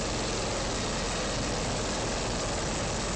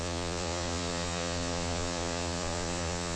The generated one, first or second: second